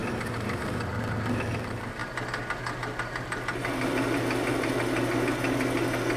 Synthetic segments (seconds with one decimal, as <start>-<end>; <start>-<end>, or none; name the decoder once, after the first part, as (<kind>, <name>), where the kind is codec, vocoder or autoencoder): 2.0-5.1 (vocoder, BigVGAN v2)